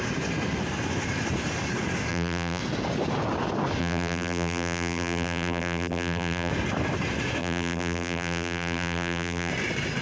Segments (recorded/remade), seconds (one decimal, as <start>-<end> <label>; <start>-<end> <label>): 0.0-2.1 recorded; 2.1-2.6 remade; 2.6-3.8 recorded; 3.8-6.5 remade; 6.5-7.4 recorded; 7.4-9.5 remade; 9.5-10.0 recorded